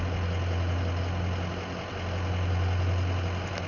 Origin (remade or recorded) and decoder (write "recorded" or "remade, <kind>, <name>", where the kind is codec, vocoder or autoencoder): recorded